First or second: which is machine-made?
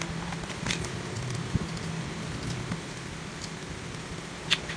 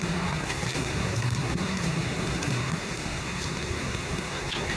second